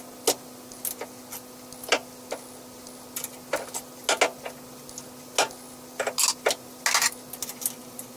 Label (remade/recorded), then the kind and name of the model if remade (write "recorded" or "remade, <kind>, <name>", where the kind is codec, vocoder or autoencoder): recorded